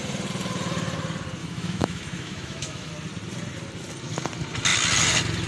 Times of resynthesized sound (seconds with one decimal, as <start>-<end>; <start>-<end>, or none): 1.4-2.9

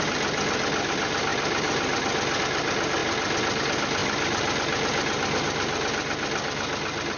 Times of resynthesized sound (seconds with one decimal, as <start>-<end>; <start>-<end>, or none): none

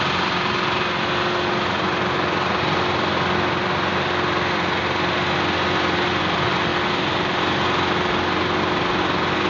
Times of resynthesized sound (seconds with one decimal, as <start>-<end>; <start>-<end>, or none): none